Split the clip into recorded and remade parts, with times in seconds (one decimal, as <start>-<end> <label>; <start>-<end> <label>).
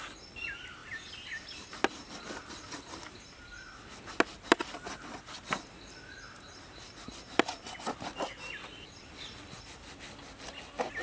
0.0-11.0 recorded